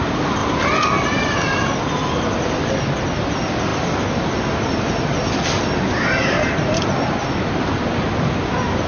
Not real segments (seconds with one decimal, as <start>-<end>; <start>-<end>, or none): none